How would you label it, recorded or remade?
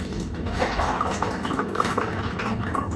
remade